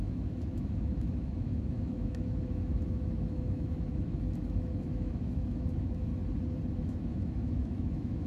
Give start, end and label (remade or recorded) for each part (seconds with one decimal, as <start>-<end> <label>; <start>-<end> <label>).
0.0-6.1 remade; 6.1-6.8 recorded; 6.8-8.3 remade